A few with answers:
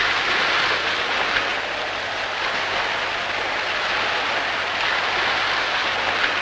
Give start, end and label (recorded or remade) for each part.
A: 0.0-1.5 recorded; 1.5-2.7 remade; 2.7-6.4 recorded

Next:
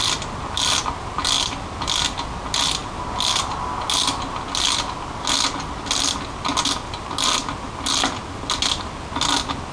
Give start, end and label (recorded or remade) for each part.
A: 0.0-9.7 recorded

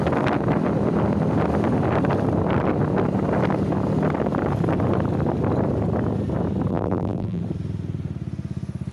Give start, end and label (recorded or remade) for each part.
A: 0.0-6.7 recorded; 6.7-7.4 remade; 7.4-8.9 recorded

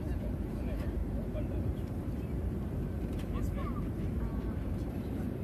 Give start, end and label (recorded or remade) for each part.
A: 0.0-5.4 remade

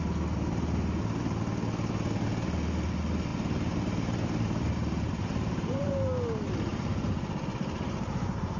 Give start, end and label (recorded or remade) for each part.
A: 0.0-3.3 recorded; 3.3-5.9 remade; 5.9-6.7 recorded; 6.7-8.6 remade

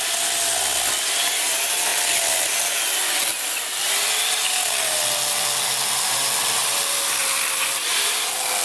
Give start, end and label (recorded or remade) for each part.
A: 0.0-6.6 recorded; 6.6-8.0 remade; 8.0-8.6 recorded